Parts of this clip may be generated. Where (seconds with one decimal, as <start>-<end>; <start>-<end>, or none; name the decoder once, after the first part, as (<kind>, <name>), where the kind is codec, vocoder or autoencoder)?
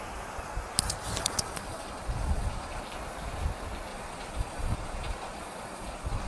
1.2-2.8 (vocoder, Vocos); 3.9-6.3